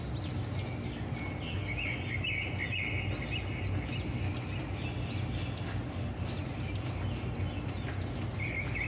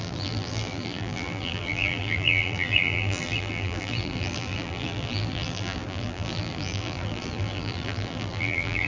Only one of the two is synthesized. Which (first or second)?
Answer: second